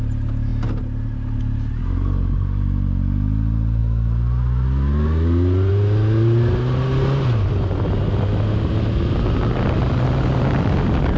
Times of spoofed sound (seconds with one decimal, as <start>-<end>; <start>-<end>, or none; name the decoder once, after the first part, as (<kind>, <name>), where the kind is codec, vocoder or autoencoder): none